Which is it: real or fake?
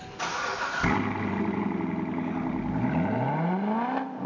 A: real